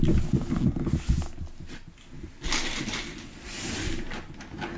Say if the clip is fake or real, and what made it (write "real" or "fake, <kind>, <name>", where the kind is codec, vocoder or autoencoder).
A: real